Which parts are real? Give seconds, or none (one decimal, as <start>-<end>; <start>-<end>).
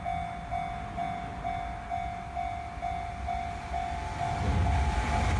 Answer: 0.0-5.4